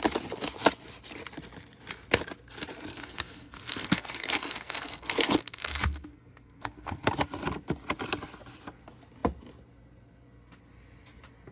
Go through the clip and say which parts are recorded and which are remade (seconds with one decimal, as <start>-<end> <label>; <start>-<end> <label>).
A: 0.0-2.9 recorded; 2.9-7.1 remade; 7.1-11.5 recorded